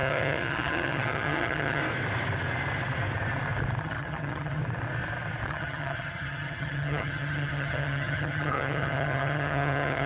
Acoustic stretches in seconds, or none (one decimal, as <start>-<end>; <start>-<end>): 1.8-3.8; 4.6-5.5

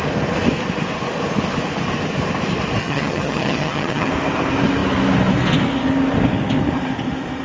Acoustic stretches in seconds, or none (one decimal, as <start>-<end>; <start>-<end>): 0.0-2.8; 4.1-7.4